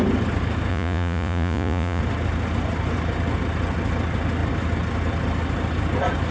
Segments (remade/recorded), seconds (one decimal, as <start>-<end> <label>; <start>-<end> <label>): 0.0-0.7 recorded; 0.7-2.0 remade; 2.0-6.3 recorded

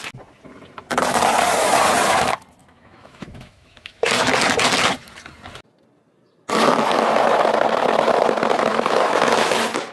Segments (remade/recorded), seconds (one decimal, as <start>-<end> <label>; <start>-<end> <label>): 0.0-2.6 recorded; 2.6-4.1 remade; 4.1-8.7 recorded; 8.7-9.5 remade; 9.5-9.9 recorded